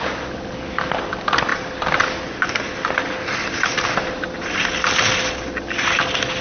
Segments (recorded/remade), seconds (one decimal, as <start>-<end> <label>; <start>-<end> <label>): 0.0-6.4 recorded